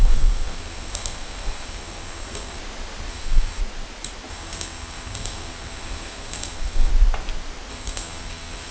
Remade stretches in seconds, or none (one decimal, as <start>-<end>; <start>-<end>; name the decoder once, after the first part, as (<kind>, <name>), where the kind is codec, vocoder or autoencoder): 0.0-2.6 (codec, SNAC); 3.1-3.6; 4.3-6.9; 7.7-8.7